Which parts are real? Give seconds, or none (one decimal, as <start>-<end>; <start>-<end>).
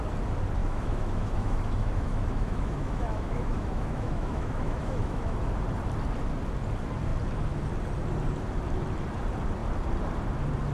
0.0-0.6; 5.5-10.7